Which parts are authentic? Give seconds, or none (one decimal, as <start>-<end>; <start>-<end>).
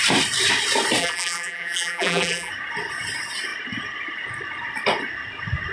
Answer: 0.0-1.0; 2.5-5.7